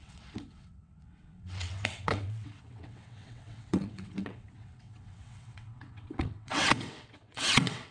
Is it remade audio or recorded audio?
remade